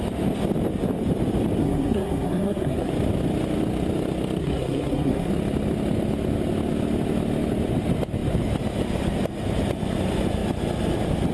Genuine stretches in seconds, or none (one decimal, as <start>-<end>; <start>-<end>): 0.0-1.6; 2.9-4.4; 5.3-11.3